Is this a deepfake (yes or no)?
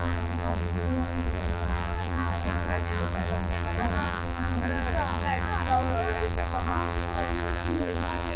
yes